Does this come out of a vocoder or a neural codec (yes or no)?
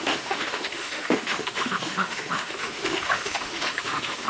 yes